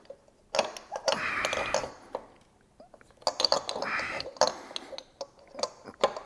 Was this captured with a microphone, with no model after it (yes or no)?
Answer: yes